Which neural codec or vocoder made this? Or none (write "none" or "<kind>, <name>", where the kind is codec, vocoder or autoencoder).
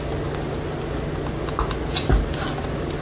none